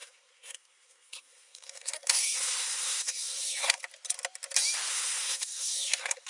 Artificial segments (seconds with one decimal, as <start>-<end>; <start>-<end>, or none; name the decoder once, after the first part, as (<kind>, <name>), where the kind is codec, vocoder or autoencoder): 0.0-3.8 (codec, SNAC); 4.9-6.3